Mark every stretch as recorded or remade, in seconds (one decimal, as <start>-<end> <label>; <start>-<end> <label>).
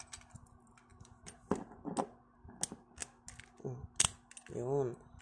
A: 0.0-5.2 recorded